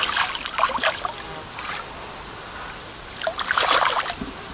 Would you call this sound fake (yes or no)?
no